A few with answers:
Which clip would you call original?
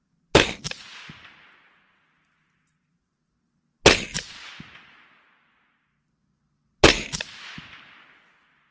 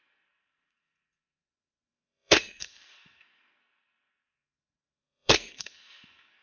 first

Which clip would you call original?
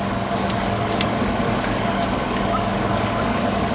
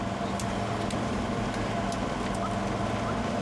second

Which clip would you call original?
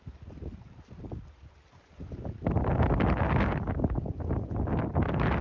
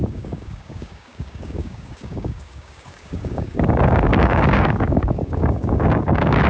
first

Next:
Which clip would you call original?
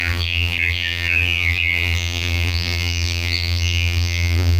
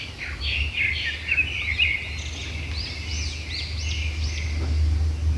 second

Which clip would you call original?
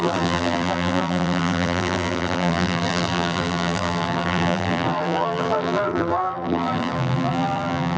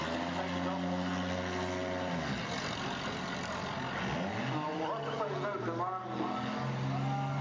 second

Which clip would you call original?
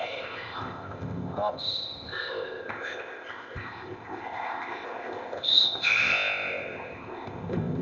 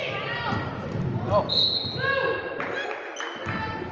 second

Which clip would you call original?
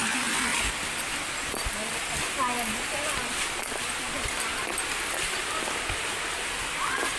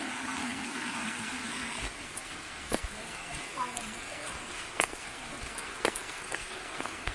first